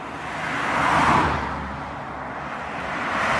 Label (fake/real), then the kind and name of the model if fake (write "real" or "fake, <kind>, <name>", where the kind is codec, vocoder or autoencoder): real